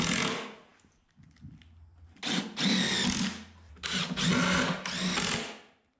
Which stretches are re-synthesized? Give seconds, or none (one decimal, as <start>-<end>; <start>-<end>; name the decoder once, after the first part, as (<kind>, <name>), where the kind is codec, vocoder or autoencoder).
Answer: none